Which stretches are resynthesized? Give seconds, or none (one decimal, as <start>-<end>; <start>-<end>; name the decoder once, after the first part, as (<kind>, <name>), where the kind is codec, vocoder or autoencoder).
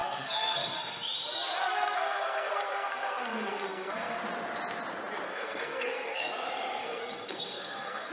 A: 0.0-0.8 (codec, SNAC); 1.6-4.2; 5.3-6.3; 6.8-8.1